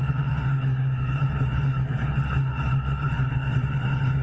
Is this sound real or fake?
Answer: fake